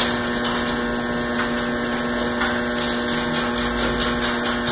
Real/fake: real